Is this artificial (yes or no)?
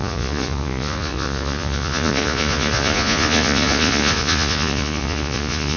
yes